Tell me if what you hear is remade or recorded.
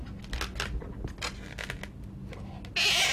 recorded